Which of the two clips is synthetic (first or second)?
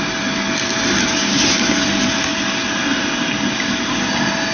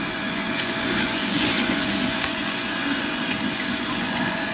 second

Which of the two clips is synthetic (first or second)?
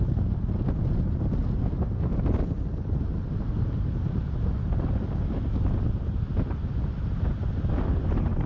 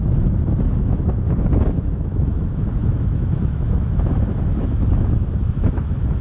second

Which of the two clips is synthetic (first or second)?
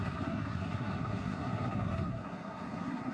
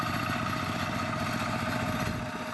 first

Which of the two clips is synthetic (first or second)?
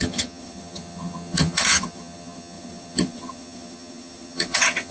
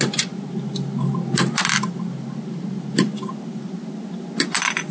first